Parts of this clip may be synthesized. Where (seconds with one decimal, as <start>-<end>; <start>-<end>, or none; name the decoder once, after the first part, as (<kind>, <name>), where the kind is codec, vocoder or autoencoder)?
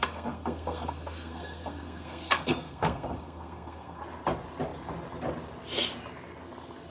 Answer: 0.0-4.0 (codec, SNAC)